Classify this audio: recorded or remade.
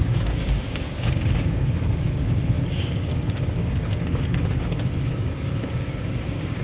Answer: remade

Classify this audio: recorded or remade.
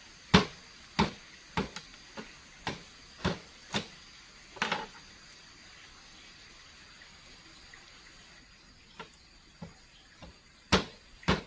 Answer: recorded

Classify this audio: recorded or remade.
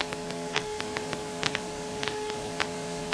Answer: remade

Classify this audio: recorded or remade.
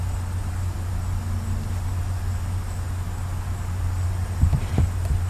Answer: recorded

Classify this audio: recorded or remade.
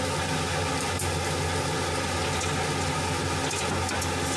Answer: recorded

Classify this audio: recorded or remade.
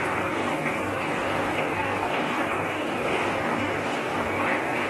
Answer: remade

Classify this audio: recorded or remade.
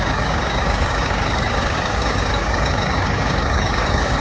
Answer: remade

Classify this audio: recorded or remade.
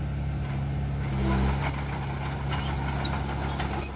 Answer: recorded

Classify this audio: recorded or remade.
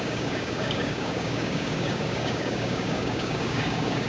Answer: remade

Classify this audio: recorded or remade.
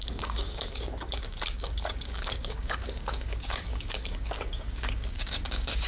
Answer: remade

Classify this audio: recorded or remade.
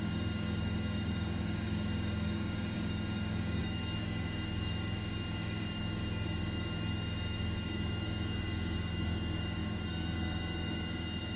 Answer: remade